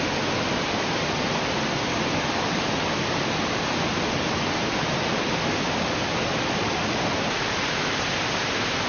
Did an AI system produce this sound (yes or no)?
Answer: no